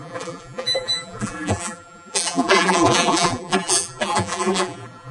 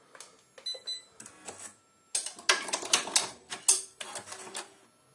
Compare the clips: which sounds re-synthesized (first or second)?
first